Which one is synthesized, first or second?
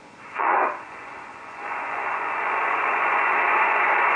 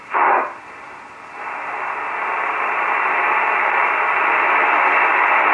first